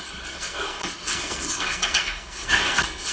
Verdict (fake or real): fake